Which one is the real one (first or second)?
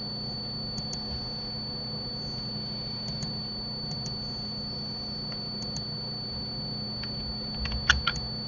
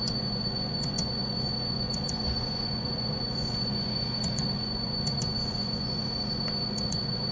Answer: first